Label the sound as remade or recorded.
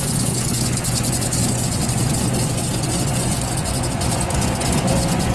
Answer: remade